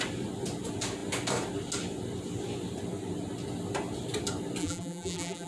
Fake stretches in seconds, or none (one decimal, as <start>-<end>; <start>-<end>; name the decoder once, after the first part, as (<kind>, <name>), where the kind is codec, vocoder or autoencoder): 4.6-5.5 (vocoder, BigVGAN v2)